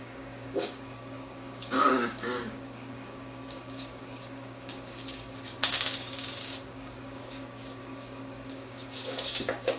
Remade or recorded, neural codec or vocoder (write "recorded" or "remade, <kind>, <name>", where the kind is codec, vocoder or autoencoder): remade, codec, DAC